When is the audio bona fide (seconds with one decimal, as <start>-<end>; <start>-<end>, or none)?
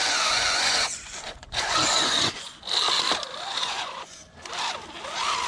2.6-3.5; 4.5-5.5